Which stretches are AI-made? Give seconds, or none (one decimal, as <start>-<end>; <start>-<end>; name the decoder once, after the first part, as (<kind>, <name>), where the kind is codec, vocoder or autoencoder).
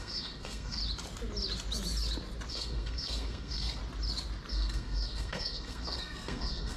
0.0-0.8 (codec, SNAC); 2.5-3.8; 4.5-6.8